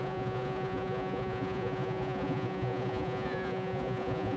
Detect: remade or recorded remade